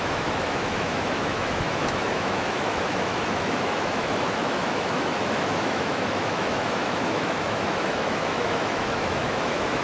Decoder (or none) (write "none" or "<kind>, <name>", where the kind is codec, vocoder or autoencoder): autoencoder, DAC-VAE